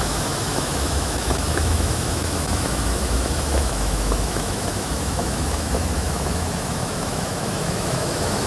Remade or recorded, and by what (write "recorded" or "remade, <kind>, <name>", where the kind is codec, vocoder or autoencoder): remade, autoencoder, DAC-VAE